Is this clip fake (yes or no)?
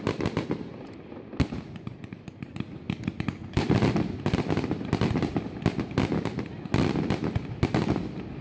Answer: no